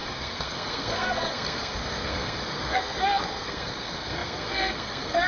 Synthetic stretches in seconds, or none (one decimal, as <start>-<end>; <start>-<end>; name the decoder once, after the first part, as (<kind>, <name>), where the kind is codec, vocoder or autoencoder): 0.0-5.3 (codec, SNAC)